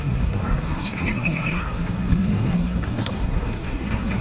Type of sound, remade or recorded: remade